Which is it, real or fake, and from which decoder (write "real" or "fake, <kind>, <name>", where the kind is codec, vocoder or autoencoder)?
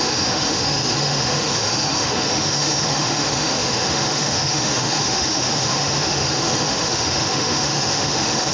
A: fake, autoencoder, DAC-VAE